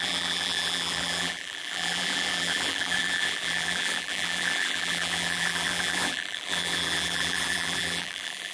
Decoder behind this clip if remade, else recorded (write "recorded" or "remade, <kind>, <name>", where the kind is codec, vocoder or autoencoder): remade, vocoder, BigVGAN v2